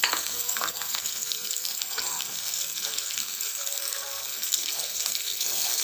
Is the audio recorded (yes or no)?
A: no